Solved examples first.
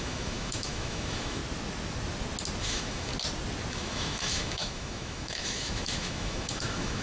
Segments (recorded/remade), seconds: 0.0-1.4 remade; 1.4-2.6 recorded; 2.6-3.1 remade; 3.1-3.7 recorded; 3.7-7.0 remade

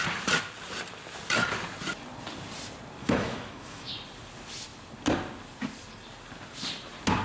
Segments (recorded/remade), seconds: 0.0-3.0 recorded; 3.0-3.9 remade; 3.9-7.2 recorded

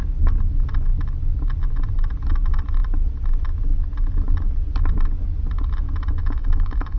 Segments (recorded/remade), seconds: 0.0-6.2 recorded; 6.2-7.0 remade

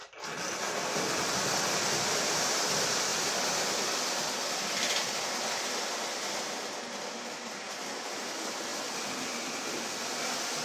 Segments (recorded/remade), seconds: 0.0-10.6 recorded

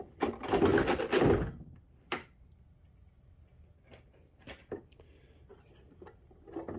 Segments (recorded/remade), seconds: 0.0-6.8 recorded

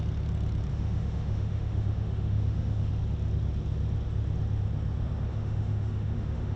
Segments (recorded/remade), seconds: 0.0-0.7 recorded; 0.7-2.9 remade; 2.9-5.3 recorded; 5.3-6.6 remade